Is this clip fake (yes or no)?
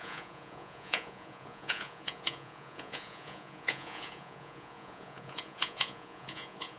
yes